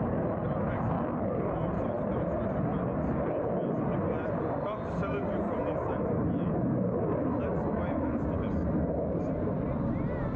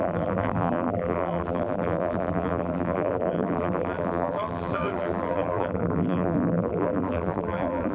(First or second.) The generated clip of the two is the second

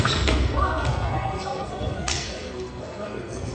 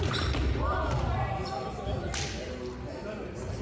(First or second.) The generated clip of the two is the first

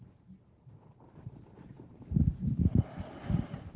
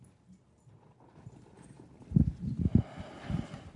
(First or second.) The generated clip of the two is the first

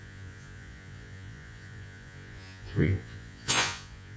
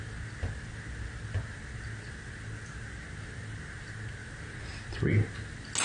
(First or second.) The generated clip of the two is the first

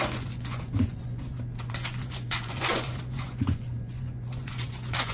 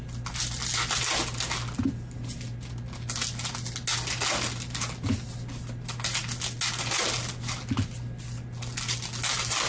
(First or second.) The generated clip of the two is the first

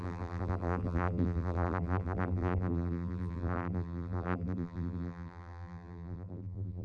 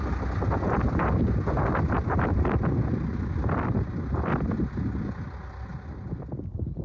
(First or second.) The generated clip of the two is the first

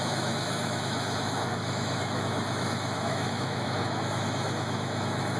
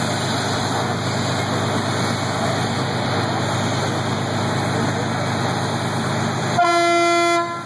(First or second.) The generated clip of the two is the first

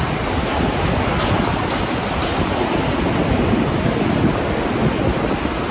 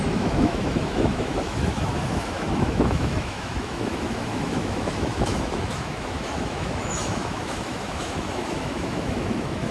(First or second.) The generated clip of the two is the second